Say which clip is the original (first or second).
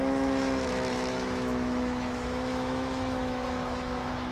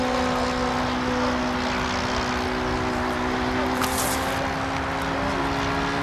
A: second